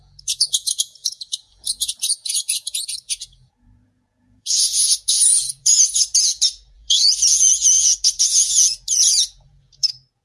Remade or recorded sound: remade